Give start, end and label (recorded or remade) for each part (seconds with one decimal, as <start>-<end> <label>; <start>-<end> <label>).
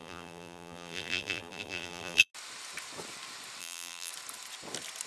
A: 0.0-2.3 remade; 2.3-3.6 recorded; 3.6-4.1 remade; 4.1-5.1 recorded